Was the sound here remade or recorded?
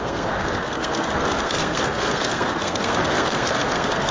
remade